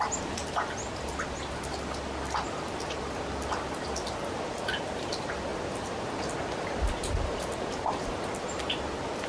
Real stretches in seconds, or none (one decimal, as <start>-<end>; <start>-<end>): 0.0-9.3